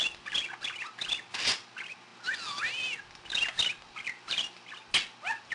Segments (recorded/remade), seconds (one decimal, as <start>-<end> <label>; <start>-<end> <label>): 0.0-5.5 recorded